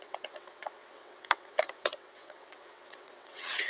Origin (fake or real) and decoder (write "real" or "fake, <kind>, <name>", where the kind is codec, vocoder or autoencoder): fake, vocoder, WaveNeXt